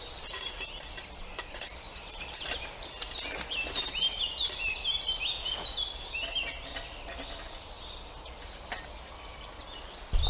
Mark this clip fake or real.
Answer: real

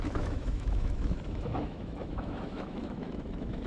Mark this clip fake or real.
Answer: fake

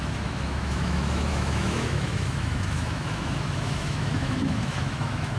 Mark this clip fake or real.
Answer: fake